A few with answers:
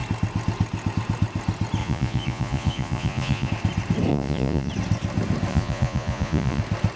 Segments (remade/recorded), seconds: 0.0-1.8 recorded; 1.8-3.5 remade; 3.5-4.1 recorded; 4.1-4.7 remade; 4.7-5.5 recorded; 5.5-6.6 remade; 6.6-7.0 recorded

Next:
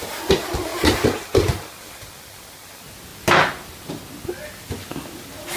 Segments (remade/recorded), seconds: 0.0-0.7 recorded; 0.7-2.1 remade; 2.1-3.1 recorded; 3.1-3.9 remade; 3.9-4.9 recorded; 4.9-5.6 remade

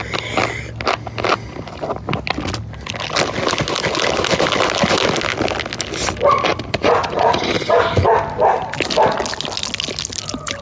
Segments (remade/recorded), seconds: 0.0-6.5 recorded; 6.5-7.5 remade; 7.5-10.6 recorded

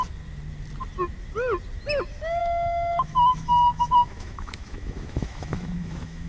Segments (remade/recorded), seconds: 0.0-2.4 recorded; 2.4-6.3 remade